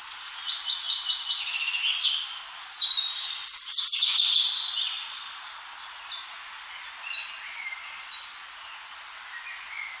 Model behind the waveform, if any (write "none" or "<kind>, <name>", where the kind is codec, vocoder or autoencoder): none